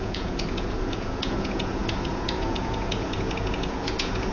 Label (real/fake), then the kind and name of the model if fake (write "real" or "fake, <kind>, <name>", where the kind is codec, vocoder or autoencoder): fake, vocoder, Vocos